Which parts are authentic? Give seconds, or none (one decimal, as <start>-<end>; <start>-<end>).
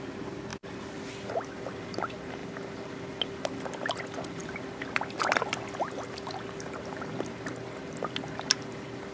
0.0-9.1